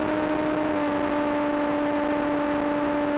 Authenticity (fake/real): real